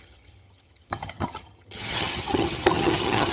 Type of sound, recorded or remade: remade